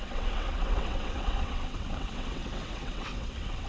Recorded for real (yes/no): no